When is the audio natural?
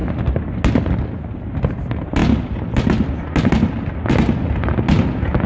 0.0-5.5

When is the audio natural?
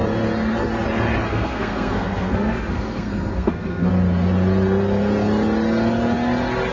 0.0-1.3; 3.9-6.7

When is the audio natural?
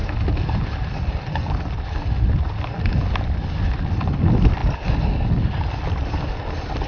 0.0-6.9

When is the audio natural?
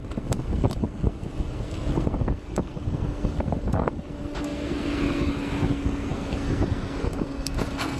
none